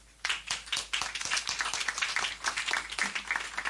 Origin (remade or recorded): recorded